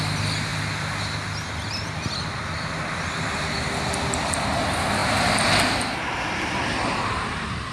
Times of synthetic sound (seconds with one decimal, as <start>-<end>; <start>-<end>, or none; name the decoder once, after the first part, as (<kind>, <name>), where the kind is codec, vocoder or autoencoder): none